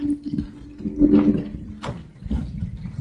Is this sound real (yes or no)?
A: yes